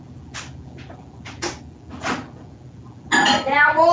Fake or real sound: real